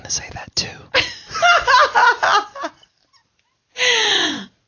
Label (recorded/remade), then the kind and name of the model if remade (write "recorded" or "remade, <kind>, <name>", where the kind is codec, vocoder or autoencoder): recorded